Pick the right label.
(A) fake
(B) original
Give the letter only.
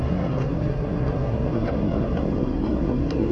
A